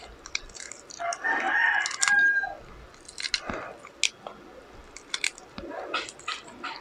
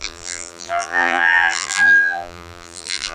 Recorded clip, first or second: first